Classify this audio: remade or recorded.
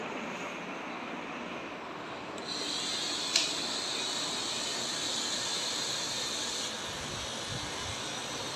recorded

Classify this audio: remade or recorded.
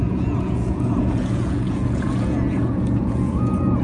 remade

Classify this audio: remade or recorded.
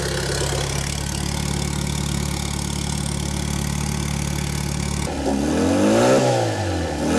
recorded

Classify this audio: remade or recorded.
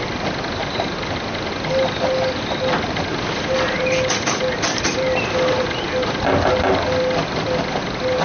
recorded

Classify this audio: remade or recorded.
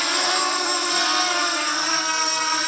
remade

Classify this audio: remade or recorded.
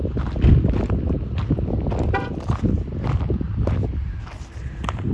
recorded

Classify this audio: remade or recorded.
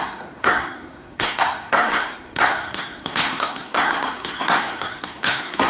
remade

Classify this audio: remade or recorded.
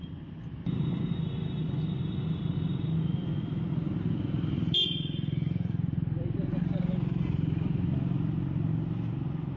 recorded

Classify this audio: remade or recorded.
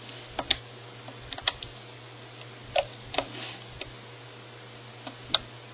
recorded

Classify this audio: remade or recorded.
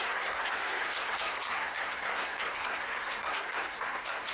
remade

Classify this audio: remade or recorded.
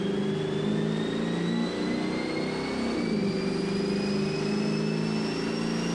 recorded